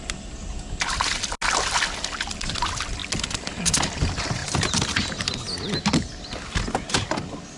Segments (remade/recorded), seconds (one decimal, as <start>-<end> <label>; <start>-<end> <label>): 0.0-4.4 recorded; 4.4-5.2 remade; 5.2-7.6 recorded